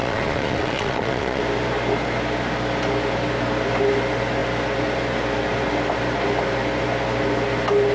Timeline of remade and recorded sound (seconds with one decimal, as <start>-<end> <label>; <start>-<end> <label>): 0.0-1.4 remade; 1.4-7.9 recorded